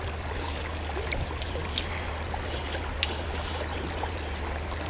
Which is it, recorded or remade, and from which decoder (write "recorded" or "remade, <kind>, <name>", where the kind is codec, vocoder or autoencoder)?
recorded